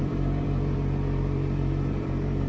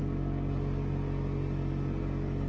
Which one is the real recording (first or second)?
second